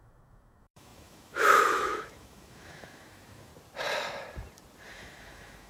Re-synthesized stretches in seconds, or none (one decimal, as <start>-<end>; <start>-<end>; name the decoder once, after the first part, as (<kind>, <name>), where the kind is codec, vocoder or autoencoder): 0.0-3.5 (autoencoder, DAC-VAE); 4.9-5.7